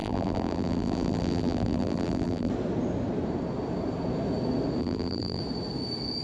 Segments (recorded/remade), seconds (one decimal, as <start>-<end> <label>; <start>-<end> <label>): 0.0-2.5 remade; 2.5-4.8 recorded; 4.8-5.4 remade; 5.4-6.2 recorded